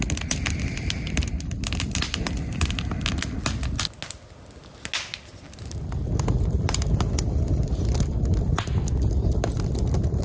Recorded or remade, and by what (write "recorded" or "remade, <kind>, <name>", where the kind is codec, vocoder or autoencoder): recorded